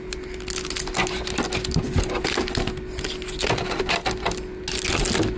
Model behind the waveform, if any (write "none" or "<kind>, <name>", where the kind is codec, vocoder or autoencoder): none